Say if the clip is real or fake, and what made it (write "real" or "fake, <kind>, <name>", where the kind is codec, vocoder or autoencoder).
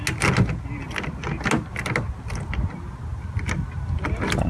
real